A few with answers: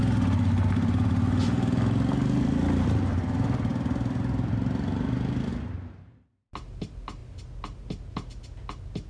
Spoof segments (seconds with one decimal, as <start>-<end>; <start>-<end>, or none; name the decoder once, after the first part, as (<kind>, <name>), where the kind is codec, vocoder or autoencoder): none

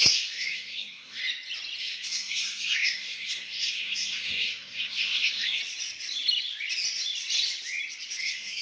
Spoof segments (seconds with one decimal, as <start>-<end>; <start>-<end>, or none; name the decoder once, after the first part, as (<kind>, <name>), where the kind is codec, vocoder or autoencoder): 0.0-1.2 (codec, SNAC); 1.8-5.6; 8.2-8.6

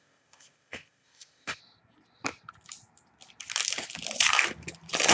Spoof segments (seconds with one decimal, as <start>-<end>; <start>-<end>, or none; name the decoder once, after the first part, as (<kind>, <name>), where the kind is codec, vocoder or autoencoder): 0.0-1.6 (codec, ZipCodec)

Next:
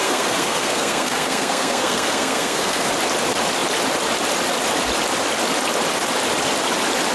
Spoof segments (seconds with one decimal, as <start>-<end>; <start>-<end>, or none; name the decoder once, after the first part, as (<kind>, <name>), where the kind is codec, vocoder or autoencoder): 0.0-2.9 (codec, SNAC)

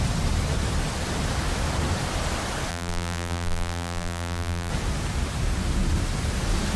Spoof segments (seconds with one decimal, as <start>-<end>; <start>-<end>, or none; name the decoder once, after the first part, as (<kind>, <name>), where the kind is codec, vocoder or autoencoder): 2.7-4.7 (vocoder, BigVGAN v2)